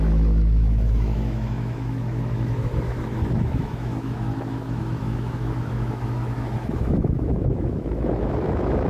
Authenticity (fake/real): fake